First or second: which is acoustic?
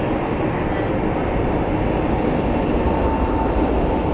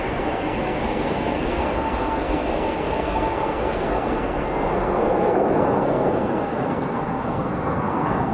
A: first